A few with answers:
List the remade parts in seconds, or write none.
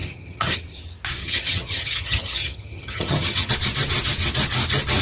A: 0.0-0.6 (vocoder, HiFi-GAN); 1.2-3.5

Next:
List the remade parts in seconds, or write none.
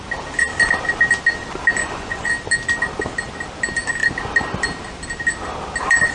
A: 1.8-2.3 (vocoder, Vocos)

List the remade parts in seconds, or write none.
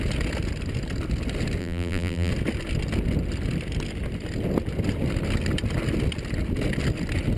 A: 1.6-2.3 (vocoder, BigVGAN v2)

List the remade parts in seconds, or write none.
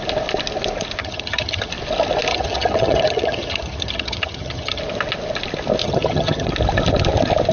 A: 1.0-1.7 (vocoder, HiFi-GAN); 2.3-4.8; 5.8-6.5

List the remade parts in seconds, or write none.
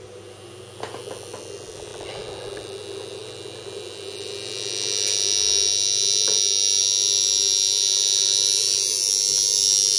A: none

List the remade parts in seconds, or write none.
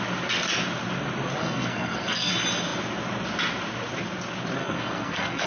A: 1.4-2.3 (codec, SNAC); 4.6-5.5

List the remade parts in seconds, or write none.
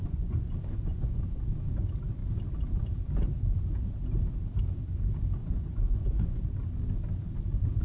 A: 0.0-1.2 (vocoder, Vocos); 5.4-6.4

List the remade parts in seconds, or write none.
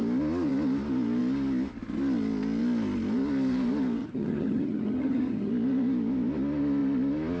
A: 4.0-5.5 (vocoder, HiFi-GAN)